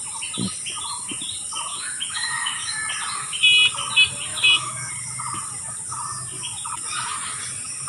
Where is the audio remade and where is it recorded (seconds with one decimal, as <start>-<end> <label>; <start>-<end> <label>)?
0.0-1.7 recorded; 1.7-2.9 remade; 2.9-4.3 recorded; 4.3-4.9 remade; 4.9-7.9 recorded